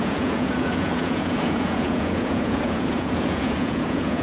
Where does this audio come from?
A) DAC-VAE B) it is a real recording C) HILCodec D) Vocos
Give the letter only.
D